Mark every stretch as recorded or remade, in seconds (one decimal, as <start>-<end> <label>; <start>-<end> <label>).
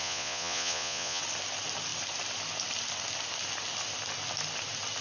0.0-1.2 remade; 1.2-5.0 recorded